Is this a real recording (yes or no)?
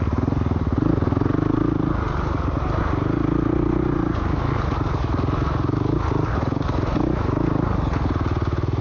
yes